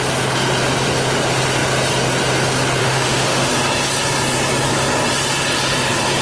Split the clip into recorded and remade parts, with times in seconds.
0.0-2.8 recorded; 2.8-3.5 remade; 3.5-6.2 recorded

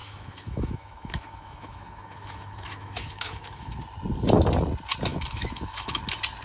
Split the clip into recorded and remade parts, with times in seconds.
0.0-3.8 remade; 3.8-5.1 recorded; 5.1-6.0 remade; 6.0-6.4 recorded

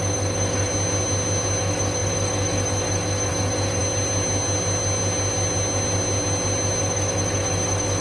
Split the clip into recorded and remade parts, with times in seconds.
0.0-0.7 remade; 0.7-1.6 recorded; 1.6-3.8 remade; 3.8-6.8 recorded; 6.8-8.0 remade

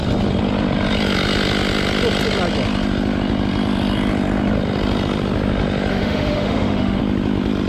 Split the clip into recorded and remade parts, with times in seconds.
0.0-5.9 recorded; 5.9-7.0 remade; 7.0-7.7 recorded

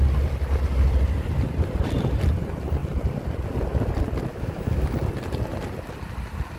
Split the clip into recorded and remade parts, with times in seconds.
0.0-4.3 recorded; 4.3-4.9 remade; 4.9-6.6 recorded

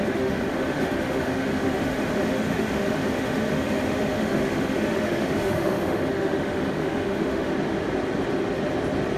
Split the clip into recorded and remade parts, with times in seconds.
0.0-7.5 remade; 7.5-9.2 recorded